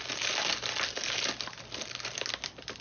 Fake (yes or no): no